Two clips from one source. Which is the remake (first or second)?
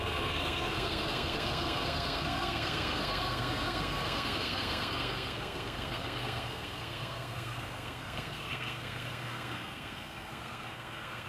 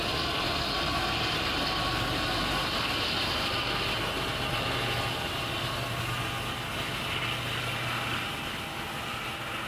first